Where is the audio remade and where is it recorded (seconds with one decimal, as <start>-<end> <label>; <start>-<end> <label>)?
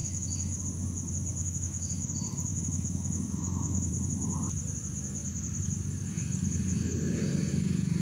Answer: 0.0-0.6 remade; 0.6-1.4 recorded; 1.4-2.1 remade; 2.1-2.5 recorded; 2.5-3.9 remade; 3.9-8.0 recorded